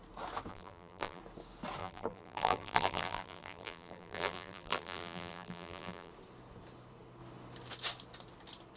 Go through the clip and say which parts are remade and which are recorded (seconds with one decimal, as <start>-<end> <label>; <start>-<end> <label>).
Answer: 0.0-0.5 recorded; 0.5-1.2 remade; 1.2-1.8 recorded; 1.8-6.1 remade; 6.1-8.8 recorded